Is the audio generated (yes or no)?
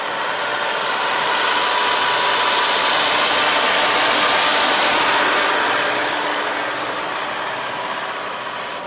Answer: no